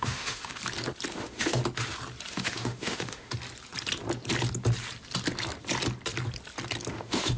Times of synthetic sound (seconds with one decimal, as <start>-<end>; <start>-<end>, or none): 0.0-0.6; 1.1-1.6; 2.3-3.3; 6.9-7.4